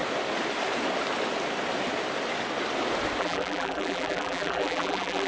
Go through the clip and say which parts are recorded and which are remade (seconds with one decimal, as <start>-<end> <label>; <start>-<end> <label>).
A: 0.0-3.2 recorded; 3.2-5.3 remade